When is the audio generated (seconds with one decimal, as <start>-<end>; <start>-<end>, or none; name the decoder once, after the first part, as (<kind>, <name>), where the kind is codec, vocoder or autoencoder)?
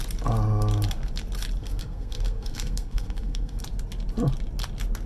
1.6-3.6 (codec, SNAC)